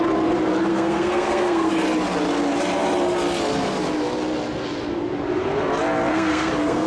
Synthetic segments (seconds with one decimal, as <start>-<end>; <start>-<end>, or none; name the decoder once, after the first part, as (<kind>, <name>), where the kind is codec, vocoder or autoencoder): 0.7-1.7 (codec, SNAC); 6.1-6.9